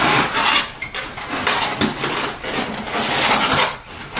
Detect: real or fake real